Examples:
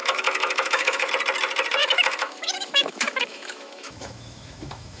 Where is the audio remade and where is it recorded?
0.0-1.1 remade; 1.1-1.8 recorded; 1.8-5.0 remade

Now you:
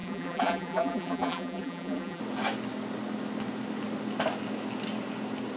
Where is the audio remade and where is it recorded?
0.0-2.2 remade; 2.2-5.6 recorded